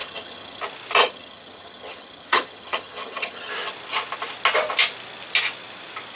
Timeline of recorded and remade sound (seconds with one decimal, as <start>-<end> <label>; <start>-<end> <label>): 0.0-0.6 remade; 0.6-1.0 recorded; 1.0-3.5 remade; 3.5-6.2 recorded